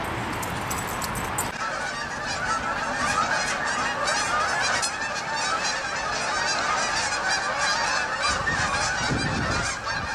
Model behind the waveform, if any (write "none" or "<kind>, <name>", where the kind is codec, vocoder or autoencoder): none